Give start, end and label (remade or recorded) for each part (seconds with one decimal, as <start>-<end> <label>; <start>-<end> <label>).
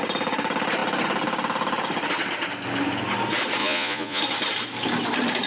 0.0-3.6 recorded; 3.6-4.2 remade; 4.2-5.5 recorded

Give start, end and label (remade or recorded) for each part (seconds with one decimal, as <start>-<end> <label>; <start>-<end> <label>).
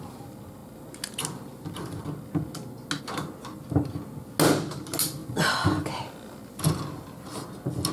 0.0-7.9 recorded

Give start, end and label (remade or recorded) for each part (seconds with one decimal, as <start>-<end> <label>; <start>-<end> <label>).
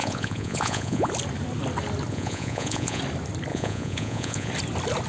0.0-1.1 remade; 1.1-2.1 recorded; 2.1-3.0 remade; 3.0-3.5 recorded; 3.5-4.5 remade; 4.5-5.1 recorded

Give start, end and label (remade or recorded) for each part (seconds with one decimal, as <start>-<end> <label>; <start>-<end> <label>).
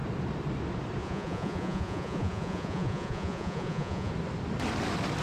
0.0-1.0 recorded; 1.0-4.1 remade; 4.1-5.2 recorded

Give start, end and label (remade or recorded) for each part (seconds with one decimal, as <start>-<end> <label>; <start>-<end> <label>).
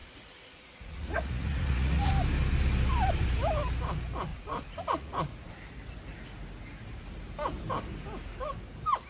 0.0-2.1 remade; 2.1-4.3 recorded; 4.3-5.5 remade; 5.5-9.1 recorded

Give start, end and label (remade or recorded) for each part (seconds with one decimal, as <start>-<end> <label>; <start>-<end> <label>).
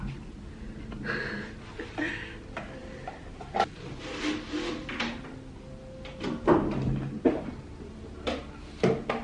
0.0-9.2 recorded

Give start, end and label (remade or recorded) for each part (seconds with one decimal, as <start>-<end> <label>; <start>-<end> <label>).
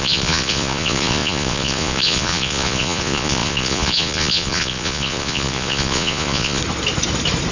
0.0-6.6 remade; 6.6-7.5 recorded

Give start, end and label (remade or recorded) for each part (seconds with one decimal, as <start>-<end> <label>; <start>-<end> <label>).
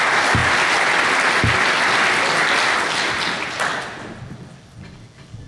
0.0-5.5 recorded